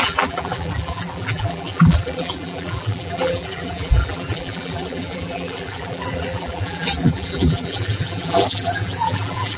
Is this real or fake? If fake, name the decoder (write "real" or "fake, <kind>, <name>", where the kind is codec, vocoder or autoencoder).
fake, vocoder, BigVGAN v2